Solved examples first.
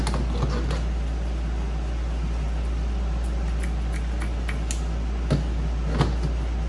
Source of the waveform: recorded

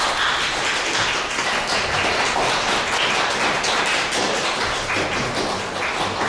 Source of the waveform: recorded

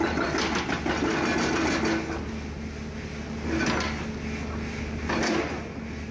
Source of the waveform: recorded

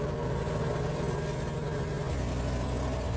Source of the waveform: recorded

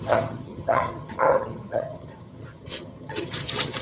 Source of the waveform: remade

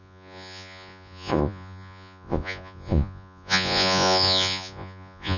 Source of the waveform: remade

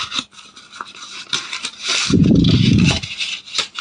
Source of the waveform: remade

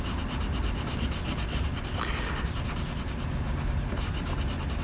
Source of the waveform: recorded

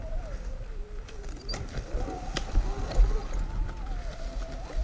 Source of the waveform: recorded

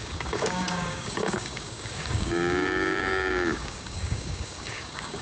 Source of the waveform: remade